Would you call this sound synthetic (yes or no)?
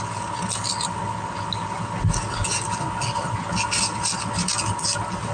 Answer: no